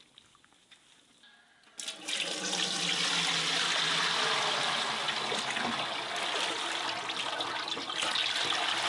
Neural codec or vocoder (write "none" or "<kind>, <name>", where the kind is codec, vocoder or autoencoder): none